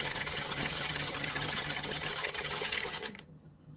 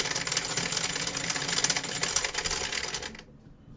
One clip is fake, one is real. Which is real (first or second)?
second